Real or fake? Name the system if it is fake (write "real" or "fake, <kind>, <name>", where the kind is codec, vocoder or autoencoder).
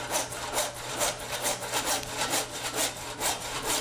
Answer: fake, vocoder, BigVGAN v2